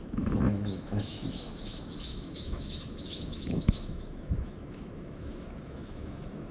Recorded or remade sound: remade